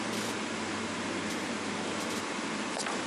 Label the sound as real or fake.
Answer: real